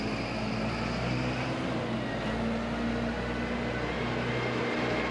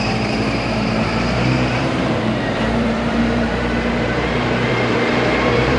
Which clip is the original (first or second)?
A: first